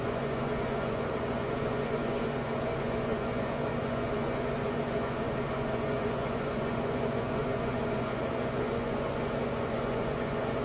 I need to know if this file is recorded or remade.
remade